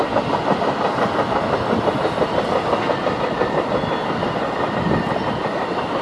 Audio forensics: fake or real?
real